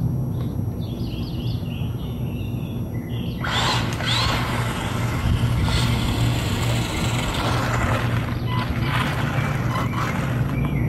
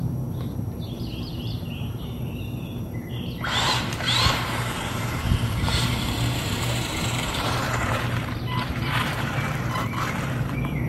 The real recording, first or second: first